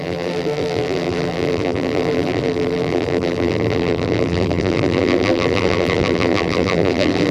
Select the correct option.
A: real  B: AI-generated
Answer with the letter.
B